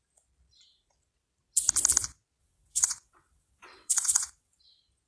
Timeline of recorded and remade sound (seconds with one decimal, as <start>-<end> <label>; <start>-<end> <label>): 0.0-2.4 recorded; 2.4-4.6 remade; 4.6-5.1 recorded